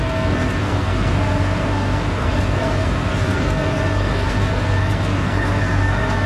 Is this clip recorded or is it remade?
remade